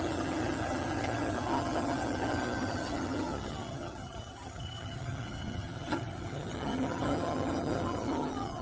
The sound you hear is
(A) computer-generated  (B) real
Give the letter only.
A